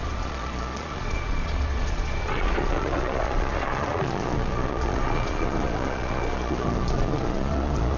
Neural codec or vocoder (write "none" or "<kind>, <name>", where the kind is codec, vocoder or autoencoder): vocoder, Vocos